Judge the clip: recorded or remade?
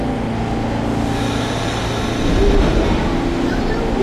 recorded